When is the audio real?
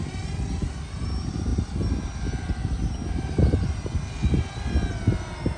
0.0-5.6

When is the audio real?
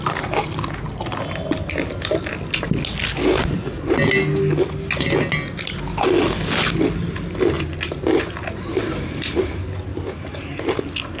0.0-9.9; 10.6-11.2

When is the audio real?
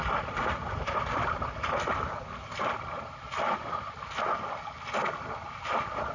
3.7-6.1